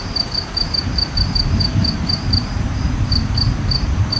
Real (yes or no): no